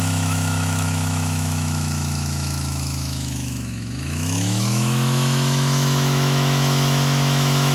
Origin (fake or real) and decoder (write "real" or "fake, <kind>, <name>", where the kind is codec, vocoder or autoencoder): fake, autoencoder, DAC-VAE